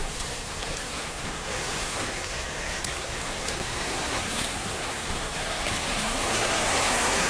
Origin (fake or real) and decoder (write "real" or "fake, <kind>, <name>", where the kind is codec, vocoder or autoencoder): fake, codec, SNAC